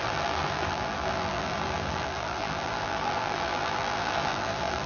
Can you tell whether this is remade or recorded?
remade